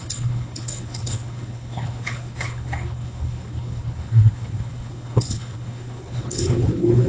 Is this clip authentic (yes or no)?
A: no